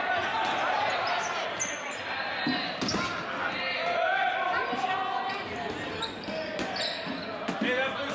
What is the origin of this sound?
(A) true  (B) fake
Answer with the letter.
A